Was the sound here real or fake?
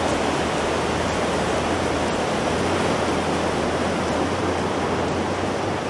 real